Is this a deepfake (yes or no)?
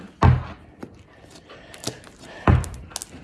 no